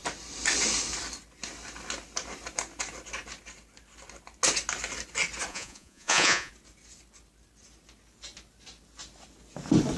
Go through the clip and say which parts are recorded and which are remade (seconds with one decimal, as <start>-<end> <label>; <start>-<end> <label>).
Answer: 0.0-5.5 recorded; 5.5-6.5 remade; 6.5-10.0 recorded